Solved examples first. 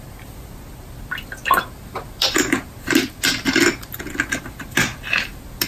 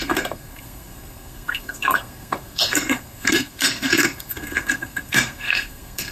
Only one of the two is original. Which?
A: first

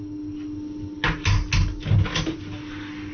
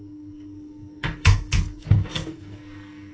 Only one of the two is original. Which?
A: first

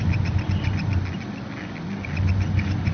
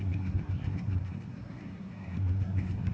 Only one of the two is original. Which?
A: first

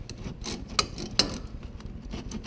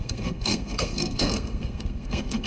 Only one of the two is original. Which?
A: first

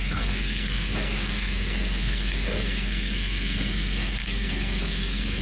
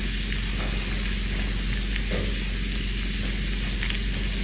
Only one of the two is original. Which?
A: second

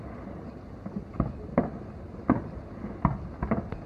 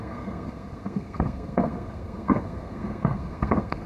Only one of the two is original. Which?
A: first